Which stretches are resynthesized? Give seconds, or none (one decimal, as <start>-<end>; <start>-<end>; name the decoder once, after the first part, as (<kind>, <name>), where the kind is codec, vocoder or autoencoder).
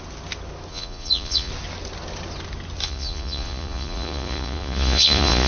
0.7-1.5 (vocoder, Vocos); 2.8-5.5